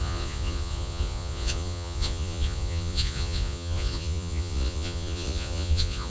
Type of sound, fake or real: fake